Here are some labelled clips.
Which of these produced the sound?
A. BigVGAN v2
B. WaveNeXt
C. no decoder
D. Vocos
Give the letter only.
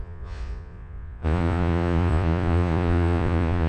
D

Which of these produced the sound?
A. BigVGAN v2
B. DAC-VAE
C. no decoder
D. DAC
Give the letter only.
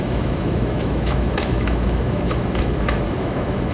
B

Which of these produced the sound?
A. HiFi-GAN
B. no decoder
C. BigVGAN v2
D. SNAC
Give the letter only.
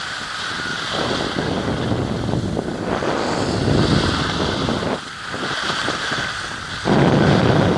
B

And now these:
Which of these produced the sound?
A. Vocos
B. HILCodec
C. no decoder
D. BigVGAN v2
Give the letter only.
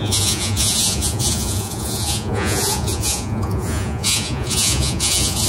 A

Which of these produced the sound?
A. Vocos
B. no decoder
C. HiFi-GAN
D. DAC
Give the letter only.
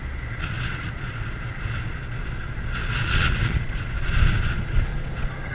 A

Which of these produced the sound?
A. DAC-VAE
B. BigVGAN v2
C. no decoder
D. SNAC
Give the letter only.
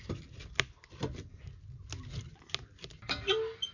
C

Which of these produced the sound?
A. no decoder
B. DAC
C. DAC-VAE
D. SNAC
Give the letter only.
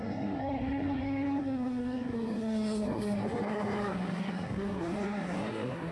D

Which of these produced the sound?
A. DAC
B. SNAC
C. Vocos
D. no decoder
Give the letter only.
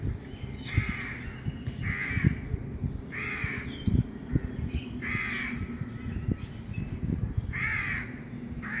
D